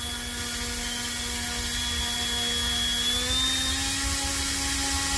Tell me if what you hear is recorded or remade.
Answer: recorded